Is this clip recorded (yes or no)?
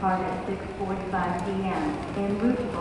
yes